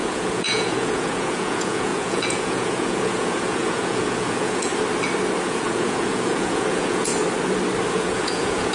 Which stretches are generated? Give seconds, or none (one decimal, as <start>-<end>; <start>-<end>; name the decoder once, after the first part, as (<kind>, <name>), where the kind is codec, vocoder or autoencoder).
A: 0.0-4.7 (vocoder, Vocos); 5.4-7.1; 7.9-8.7